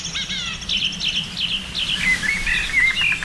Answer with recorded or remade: recorded